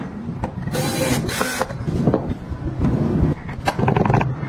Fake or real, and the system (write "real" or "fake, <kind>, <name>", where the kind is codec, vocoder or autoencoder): real